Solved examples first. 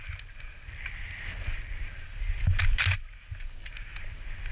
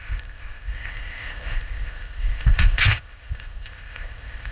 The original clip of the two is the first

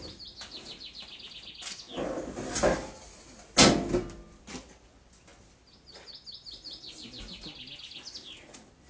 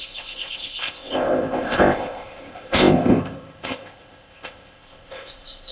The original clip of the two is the first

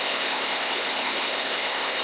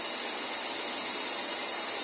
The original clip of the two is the second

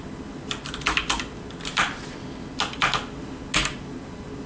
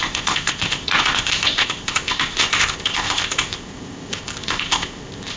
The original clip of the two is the first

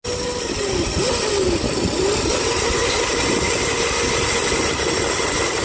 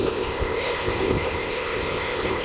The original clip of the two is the first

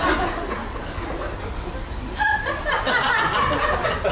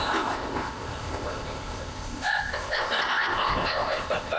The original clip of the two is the first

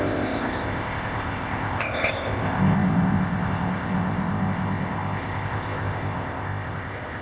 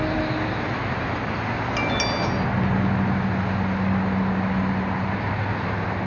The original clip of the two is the second